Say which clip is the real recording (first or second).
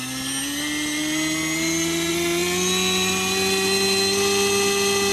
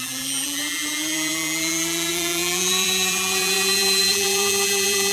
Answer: first